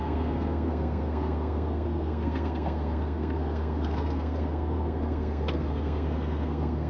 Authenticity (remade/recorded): remade